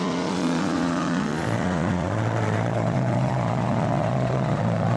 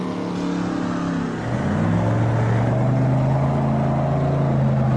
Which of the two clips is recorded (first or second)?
second